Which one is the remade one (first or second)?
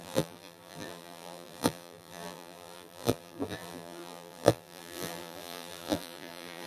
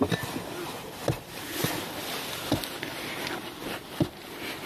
first